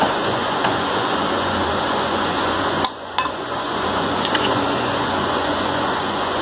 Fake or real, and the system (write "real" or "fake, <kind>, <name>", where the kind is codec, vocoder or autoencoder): fake, vocoder, Vocos